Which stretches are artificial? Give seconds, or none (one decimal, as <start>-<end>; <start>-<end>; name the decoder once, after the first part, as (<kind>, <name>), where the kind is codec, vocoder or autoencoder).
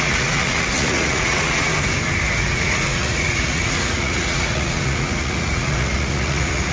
0.0-1.7 (vocoder, Vocos); 2.3-6.7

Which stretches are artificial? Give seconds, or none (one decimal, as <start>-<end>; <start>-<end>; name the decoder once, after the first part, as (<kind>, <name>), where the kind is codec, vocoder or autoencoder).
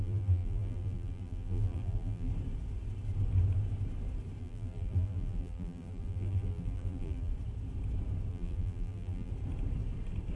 0.0-2.3 (vocoder, BigVGAN v2); 4.4-7.3; 8.3-9.3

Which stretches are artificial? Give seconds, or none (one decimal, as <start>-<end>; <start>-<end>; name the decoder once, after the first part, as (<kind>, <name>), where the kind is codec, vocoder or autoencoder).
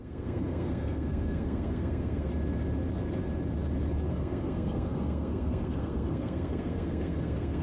0.0-2.3 (codec, SNAC); 4.1-7.6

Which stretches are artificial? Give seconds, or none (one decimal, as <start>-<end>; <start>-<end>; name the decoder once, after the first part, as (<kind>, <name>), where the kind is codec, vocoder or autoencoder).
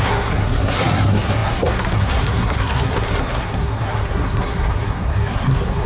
0.0-5.9 (codec, SNAC)